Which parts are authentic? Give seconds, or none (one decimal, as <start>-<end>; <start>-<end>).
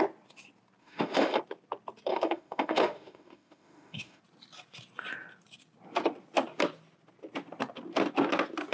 0.0-0.8; 1.4-2.1; 4.2-8.7